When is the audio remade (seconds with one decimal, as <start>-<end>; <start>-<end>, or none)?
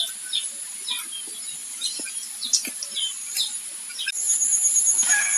none